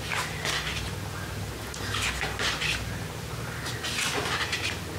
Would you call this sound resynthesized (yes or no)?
no